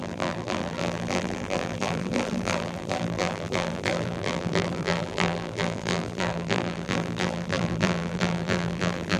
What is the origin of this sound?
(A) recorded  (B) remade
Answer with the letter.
B